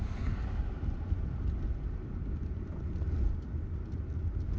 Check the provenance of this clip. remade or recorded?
recorded